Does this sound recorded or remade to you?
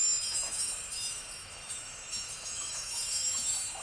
remade